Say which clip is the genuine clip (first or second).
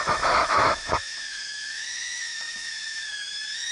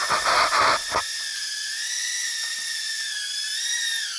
second